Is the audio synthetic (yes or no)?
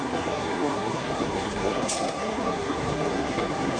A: yes